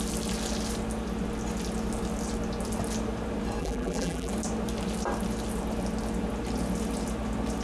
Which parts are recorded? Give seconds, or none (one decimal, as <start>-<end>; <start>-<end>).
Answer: 0.0-3.6; 4.3-7.6